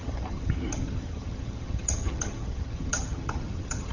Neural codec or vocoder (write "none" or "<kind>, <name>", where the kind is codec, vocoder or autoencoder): vocoder, HiFi-GAN